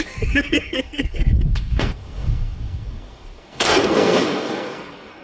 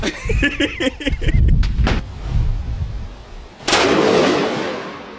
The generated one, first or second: first